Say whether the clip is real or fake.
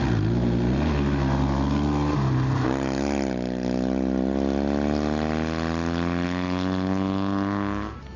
real